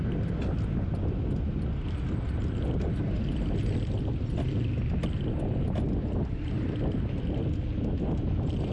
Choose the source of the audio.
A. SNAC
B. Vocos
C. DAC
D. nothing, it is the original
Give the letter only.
D